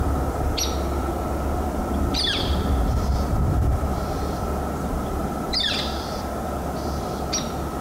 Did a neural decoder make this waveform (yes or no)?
yes